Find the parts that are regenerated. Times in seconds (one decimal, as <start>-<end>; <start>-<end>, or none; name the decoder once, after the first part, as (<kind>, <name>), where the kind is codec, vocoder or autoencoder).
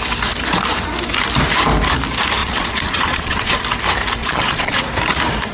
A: 2.4-3.6 (vocoder, Vocos); 4.2-4.8